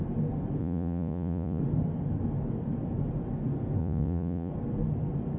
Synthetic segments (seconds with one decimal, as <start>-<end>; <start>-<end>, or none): 0.6-1.6; 3.8-4.5